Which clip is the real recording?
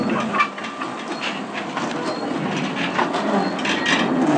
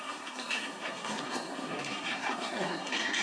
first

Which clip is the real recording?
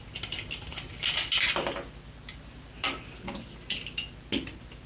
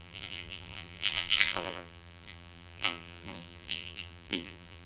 first